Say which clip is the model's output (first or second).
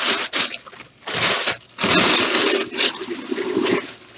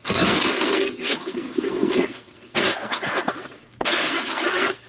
second